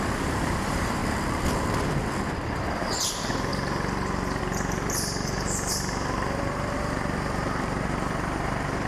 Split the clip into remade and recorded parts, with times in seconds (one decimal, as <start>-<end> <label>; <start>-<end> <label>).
0.0-1.0 remade; 1.0-2.8 recorded; 2.8-3.5 remade; 3.5-4.4 recorded; 4.4-8.9 remade